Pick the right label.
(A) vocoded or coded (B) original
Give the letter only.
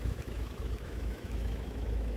A